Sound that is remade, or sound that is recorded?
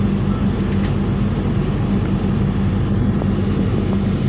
recorded